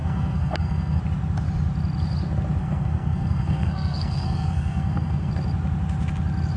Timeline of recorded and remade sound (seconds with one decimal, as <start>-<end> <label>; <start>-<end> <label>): 0.0-1.0 remade; 1.0-2.6 recorded; 2.6-5.3 remade; 5.3-6.6 recorded